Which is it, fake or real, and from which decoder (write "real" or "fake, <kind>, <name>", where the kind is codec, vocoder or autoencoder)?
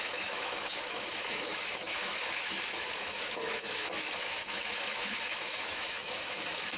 fake, autoencoder, DAC-VAE